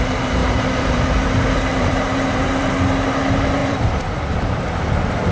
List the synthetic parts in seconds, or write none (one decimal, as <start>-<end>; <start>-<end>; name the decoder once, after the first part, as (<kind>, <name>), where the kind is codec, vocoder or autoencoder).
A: 0.4-2.7 (vocoder, BigVGAN v2); 3.6-4.6